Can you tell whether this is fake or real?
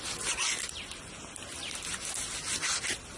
real